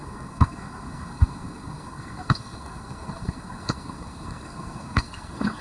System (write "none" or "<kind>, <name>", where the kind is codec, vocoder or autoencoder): codec, SNAC